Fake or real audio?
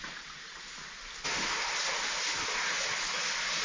real